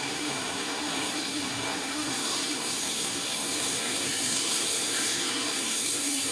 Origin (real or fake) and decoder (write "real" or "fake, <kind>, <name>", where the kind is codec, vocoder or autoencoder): fake, codec, SNAC